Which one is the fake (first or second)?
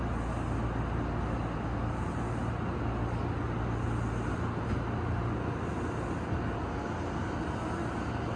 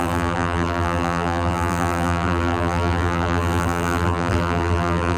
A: second